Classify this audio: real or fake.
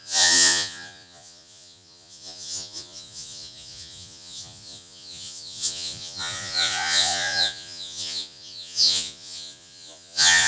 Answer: fake